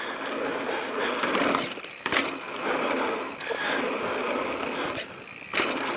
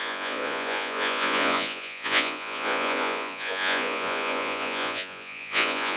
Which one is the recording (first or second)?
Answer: first